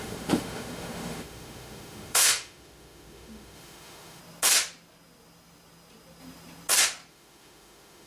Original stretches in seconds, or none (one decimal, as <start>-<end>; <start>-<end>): 4.2-7.1